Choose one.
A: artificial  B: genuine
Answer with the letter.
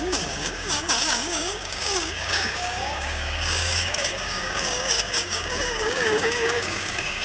A